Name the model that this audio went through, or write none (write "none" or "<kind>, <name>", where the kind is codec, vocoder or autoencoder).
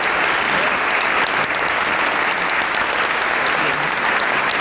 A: none